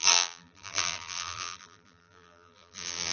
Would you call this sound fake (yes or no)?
yes